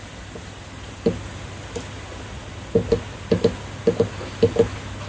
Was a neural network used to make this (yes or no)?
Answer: no